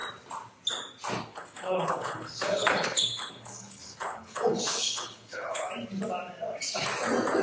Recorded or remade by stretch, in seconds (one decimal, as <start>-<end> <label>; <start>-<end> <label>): 0.0-1.3 recorded; 1.3-5.7 remade; 5.7-7.4 recorded